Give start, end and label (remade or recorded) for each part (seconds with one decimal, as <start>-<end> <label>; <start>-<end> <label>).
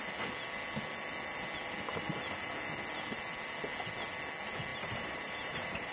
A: 0.0-4.7 recorded; 4.7-5.9 remade